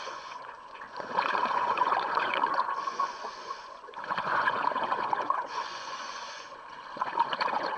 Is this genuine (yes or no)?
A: no